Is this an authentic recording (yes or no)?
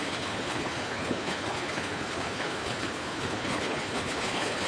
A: no